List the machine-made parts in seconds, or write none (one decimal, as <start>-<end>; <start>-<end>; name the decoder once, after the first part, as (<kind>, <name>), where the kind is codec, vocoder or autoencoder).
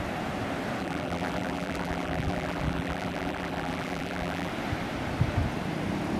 0.8-4.5 (vocoder, BigVGAN v2)